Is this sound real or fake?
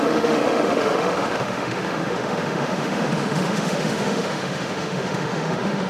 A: fake